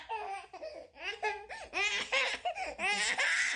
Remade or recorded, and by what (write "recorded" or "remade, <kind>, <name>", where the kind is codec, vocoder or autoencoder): recorded